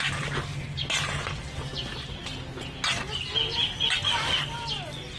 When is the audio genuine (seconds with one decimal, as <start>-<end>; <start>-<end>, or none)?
0.0-5.2